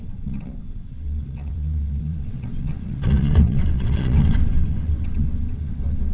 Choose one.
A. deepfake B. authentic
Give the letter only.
A